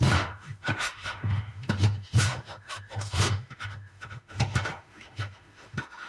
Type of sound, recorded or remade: remade